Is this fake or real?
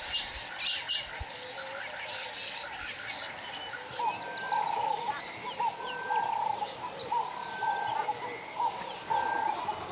real